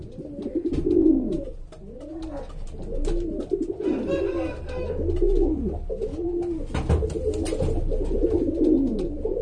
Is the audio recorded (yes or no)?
yes